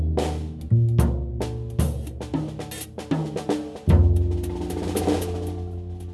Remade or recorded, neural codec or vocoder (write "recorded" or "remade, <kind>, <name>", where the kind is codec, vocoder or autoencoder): recorded